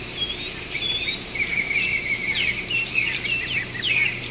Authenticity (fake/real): fake